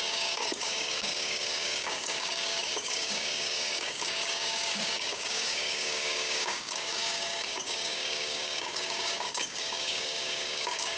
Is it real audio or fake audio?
fake